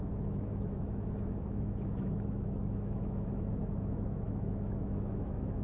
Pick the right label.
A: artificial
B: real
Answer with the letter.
A